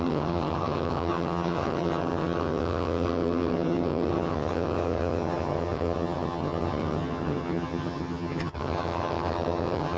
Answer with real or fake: fake